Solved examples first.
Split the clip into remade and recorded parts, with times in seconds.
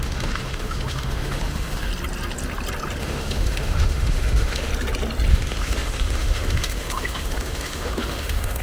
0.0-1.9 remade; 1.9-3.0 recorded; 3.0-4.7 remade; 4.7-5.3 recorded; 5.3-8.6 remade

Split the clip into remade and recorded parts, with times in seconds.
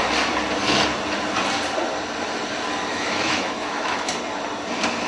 0.0-2.9 recorded; 2.9-4.1 remade; 4.1-5.1 recorded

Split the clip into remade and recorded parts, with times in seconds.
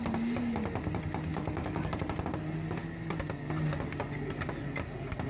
0.0-1.3 recorded; 1.3-1.9 remade; 1.9-5.3 recorded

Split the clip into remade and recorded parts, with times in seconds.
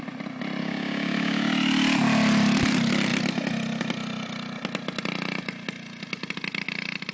0.0-0.6 recorded; 0.6-1.5 remade; 1.5-7.1 recorded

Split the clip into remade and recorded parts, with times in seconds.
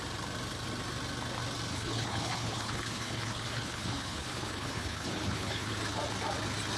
0.0-1.7 recorded; 1.7-5.8 remade; 5.8-6.8 recorded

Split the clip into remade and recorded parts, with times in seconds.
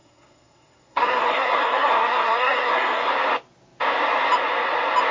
0.0-3.1 remade; 3.1-5.1 recorded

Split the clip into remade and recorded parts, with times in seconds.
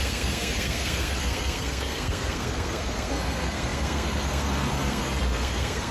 0.0-5.9 remade